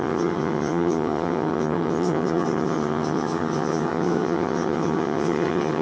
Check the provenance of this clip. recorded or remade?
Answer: remade